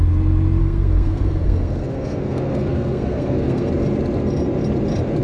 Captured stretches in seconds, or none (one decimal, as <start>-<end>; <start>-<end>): 0.0-0.6; 3.7-5.2

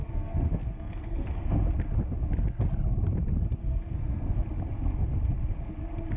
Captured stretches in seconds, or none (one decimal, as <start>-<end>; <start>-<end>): 1.6-3.6; 4.4-6.2

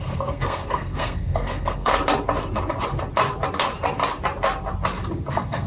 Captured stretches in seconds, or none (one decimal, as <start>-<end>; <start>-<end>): 1.9-5.3